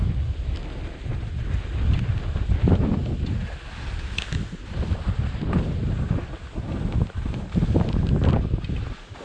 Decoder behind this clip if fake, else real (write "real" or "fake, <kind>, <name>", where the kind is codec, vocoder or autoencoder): real